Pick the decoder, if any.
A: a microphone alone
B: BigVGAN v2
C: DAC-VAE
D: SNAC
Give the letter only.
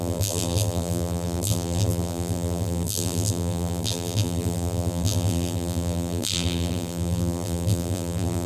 B